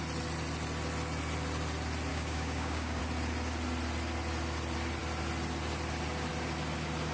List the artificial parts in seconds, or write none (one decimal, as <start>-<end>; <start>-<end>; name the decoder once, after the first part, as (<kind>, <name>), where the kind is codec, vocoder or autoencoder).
2.1-3.0 (codec, DAC)